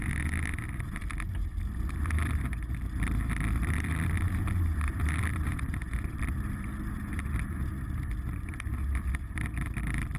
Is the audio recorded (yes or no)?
no